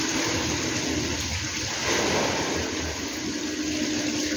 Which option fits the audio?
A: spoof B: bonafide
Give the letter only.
B